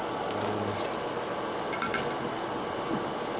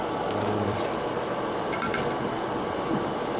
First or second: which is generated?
second